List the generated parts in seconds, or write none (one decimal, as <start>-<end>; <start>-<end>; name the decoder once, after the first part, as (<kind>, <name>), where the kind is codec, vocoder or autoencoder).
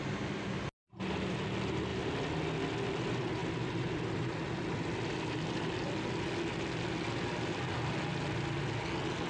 none